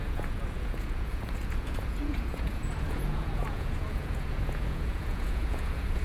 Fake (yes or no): yes